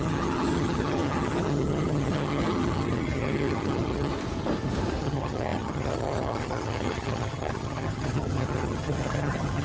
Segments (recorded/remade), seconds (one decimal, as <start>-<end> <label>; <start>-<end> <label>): 0.0-4.1 remade; 4.1-5.0 recorded; 5.0-9.6 remade